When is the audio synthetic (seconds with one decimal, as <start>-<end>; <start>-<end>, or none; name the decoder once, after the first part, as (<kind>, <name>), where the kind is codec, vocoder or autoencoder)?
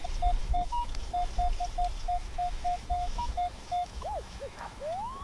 0.4-1.1 (autoencoder, DAC-VAE); 2.0-5.2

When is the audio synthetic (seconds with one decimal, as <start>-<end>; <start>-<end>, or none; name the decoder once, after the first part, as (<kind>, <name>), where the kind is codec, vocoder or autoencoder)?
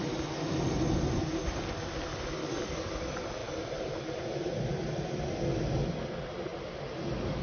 2.4-2.9 (codec, DAC)